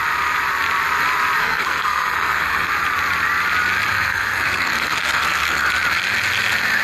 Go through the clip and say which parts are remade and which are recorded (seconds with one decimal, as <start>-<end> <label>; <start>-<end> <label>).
0.0-1.4 recorded; 1.4-2.7 remade; 2.7-3.9 recorded; 3.9-5.7 remade; 5.7-6.8 recorded